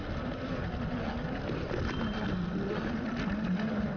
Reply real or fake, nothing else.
real